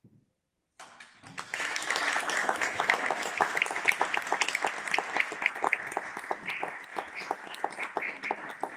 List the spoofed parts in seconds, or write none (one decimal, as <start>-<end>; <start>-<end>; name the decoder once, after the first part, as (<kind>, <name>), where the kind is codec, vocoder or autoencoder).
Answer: 1.5-2.0 (autoencoder, DAC-VAE); 2.4-3.6; 6.9-7.7

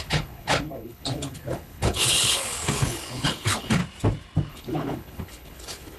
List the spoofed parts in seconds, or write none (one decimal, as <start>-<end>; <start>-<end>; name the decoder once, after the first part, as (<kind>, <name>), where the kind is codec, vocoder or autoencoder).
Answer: 0.0-3.8 (codec, HILCodec); 4.5-6.0

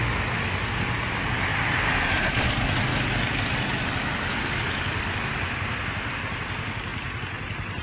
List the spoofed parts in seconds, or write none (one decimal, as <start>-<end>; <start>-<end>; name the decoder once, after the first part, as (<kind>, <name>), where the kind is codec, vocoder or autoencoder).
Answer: 1.5-2.3 (vocoder, BigVGAN v2); 6.9-7.8

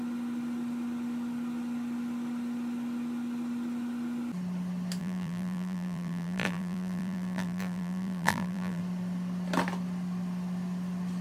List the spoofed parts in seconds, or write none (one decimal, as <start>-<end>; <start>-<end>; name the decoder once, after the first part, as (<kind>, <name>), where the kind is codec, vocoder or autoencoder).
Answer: 5.0-8.8 (vocoder, BigVGAN v2)

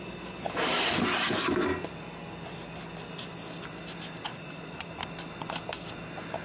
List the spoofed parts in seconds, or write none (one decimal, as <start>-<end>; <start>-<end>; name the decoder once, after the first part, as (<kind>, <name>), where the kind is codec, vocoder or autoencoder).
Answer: 4.3-5.0 (vocoder, Vocos)

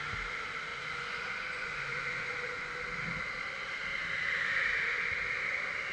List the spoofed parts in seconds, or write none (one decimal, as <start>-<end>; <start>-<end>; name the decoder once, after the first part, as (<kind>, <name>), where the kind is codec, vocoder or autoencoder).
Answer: 0.7-2.8 (vocoder, Vocos)

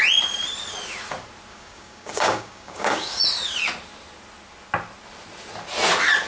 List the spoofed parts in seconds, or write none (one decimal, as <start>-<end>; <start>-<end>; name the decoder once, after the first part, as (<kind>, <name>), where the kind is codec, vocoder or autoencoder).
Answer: 1.5-3.2 (codec, DAC)